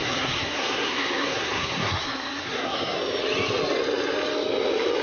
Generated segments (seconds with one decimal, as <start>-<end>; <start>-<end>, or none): 0.0-3.0